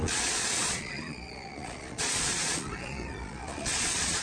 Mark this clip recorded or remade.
remade